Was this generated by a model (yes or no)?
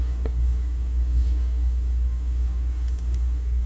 yes